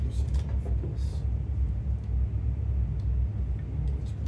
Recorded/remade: recorded